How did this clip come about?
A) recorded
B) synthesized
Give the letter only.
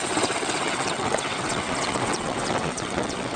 B